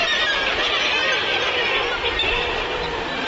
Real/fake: fake